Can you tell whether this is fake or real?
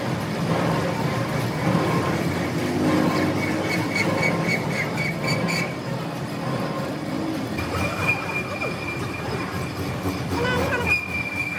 real